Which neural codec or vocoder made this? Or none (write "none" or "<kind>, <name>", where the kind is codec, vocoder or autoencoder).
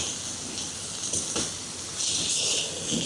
none